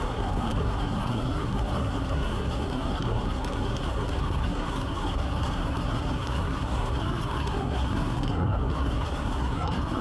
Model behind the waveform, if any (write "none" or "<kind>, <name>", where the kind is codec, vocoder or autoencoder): codec, SNAC